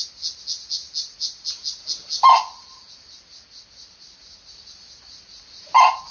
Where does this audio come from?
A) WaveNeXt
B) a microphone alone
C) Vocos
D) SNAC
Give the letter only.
B